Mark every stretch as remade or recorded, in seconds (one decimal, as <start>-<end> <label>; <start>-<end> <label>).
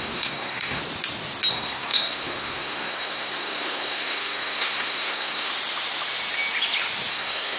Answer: 0.0-0.8 remade; 0.8-1.5 recorded; 1.5-5.5 remade; 5.5-7.1 recorded; 7.1-7.6 remade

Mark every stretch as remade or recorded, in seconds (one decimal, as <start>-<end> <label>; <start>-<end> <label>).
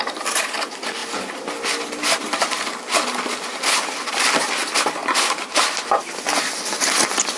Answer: 0.0-1.0 recorded; 1.0-4.5 remade; 4.5-5.0 recorded; 5.0-7.4 remade